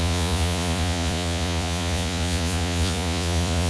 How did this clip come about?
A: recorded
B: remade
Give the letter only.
B